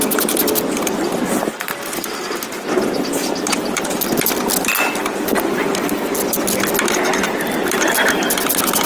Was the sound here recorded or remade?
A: recorded